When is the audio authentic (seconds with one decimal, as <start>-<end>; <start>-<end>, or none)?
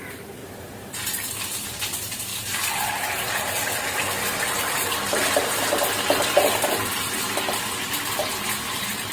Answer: 0.4-1.9; 2.3-7.4